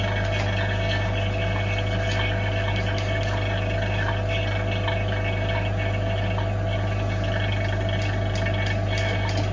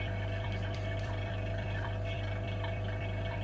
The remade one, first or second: second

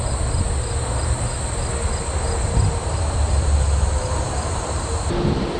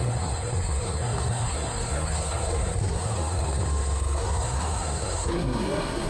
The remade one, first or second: second